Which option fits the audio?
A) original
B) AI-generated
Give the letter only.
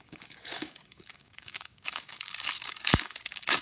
B